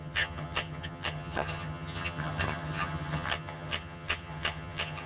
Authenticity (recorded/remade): remade